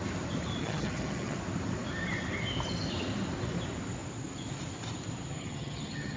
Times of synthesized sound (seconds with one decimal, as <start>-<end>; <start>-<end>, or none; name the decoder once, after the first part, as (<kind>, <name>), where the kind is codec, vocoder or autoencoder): 0.6-1.4 (vocoder, HiFi-GAN); 5.3-6.2